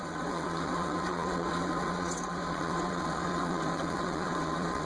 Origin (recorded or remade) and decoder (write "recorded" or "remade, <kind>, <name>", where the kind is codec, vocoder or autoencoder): remade, vocoder, WaveNeXt